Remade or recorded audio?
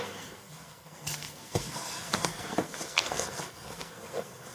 remade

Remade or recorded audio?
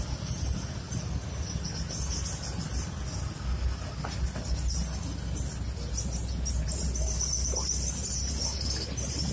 recorded